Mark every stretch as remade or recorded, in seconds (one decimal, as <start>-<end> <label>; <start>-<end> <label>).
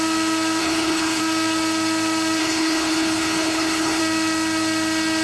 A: 0.0-0.6 recorded; 0.6-1.2 remade; 1.2-2.4 recorded; 2.4-4.0 remade; 4.0-5.2 recorded